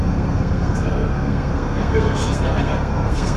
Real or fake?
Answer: fake